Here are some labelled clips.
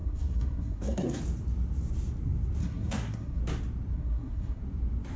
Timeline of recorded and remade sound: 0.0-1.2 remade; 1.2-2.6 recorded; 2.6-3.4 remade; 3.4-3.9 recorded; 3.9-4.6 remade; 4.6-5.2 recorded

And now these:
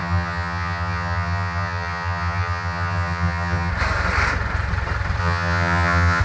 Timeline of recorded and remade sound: 0.0-3.7 remade; 3.7-5.2 recorded; 5.2-6.2 remade

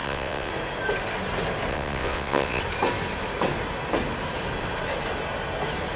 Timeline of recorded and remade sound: 0.0-0.5 remade; 0.5-1.7 recorded; 1.7-2.6 remade; 2.6-6.0 recorded

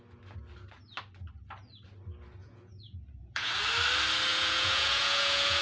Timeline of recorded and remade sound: 0.0-2.4 recorded; 2.4-3.5 remade; 3.5-4.3 recorded; 4.3-5.6 remade

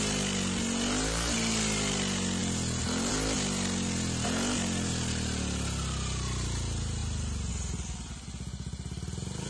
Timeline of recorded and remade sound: 0.0-9.5 recorded

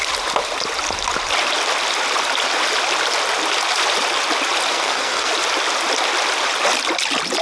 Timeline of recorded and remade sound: 0.0-4.7 recorded; 4.7-5.3 remade; 5.3-7.4 recorded

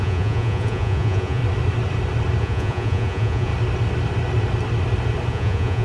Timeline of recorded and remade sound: 0.0-1.4 remade; 1.4-2.4 recorded; 2.4-3.5 remade; 3.5-5.3 recorded; 5.3-5.8 remade

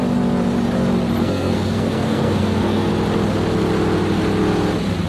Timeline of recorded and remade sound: 0.0-1.2 recorded; 1.2-2.9 remade; 2.9-5.1 recorded